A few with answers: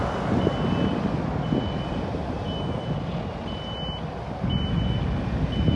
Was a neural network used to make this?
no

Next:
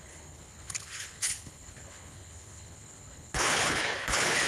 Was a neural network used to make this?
yes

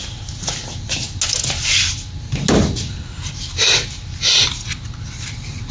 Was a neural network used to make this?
no